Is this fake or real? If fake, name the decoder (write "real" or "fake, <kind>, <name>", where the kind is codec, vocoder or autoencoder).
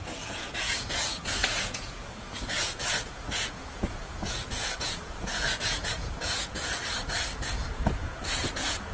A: fake, vocoder, Vocos